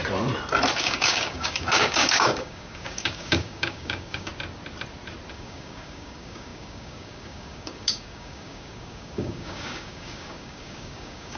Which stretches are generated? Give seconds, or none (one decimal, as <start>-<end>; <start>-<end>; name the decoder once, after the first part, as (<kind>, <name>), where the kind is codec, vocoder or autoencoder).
0.8-4.3 (codec, DAC); 5.3-11.4